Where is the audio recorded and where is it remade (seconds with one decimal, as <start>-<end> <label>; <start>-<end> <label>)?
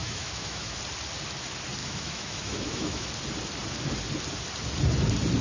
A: 0.0-0.8 remade; 0.8-1.8 recorded; 1.8-3.1 remade; 3.1-5.4 recorded